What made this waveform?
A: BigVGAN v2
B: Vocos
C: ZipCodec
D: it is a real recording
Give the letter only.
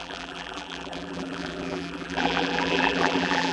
A